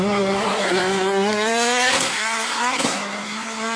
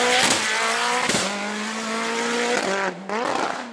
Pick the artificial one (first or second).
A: first